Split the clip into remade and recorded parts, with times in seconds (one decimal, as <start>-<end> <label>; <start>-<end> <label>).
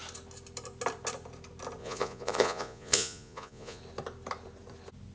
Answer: 0.0-1.8 recorded; 1.8-3.8 remade; 3.8-5.1 recorded